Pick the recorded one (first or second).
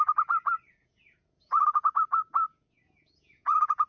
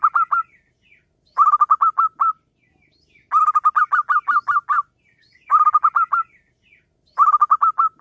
second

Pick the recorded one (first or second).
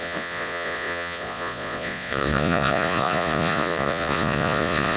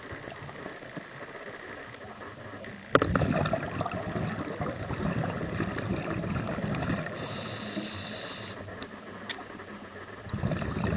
second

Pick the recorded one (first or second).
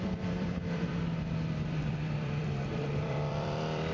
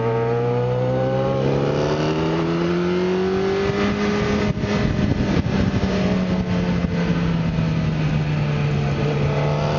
second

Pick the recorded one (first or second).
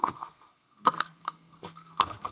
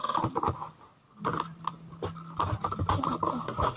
second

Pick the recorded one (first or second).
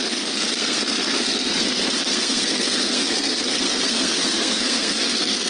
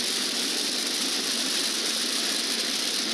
second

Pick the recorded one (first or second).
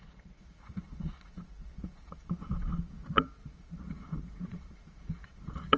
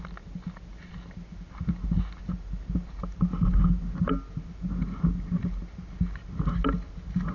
second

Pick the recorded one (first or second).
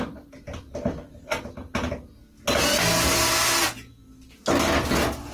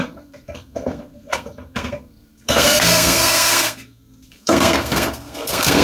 first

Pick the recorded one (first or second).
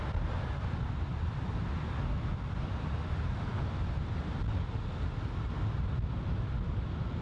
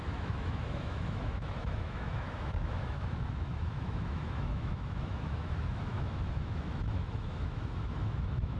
first